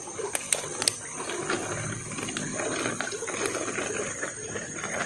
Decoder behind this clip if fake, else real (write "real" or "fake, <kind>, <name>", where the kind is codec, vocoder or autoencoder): real